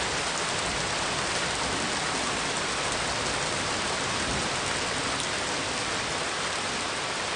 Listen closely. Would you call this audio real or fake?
real